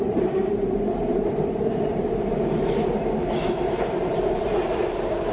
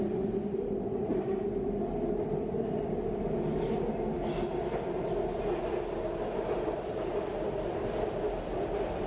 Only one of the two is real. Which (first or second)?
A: second